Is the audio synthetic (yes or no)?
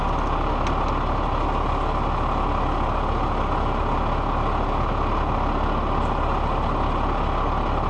no